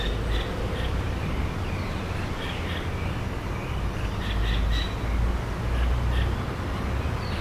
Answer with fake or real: real